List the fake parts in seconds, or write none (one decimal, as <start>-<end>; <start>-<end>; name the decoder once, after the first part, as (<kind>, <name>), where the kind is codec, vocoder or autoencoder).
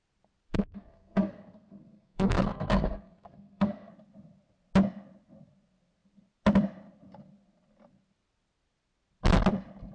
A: 0.5-3.9 (codec, SNAC)